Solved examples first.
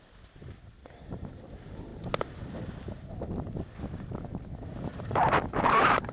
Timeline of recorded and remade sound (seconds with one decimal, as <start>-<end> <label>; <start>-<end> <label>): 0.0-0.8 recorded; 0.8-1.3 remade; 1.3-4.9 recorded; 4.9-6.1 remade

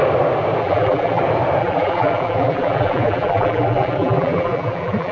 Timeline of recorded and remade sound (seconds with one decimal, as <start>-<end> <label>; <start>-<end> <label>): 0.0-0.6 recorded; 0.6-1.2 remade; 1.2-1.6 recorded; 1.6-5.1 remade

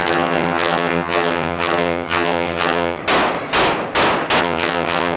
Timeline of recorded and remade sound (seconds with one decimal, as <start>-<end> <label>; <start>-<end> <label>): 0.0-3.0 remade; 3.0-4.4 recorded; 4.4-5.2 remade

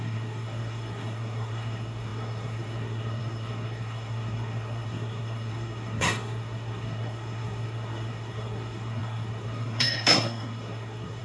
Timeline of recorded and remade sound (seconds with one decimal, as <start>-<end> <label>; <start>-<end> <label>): 0.0-11.2 remade